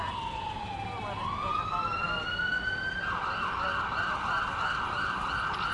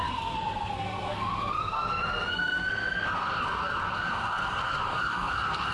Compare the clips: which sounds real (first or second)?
first